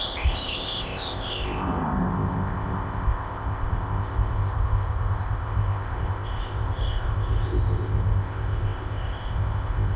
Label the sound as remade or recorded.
remade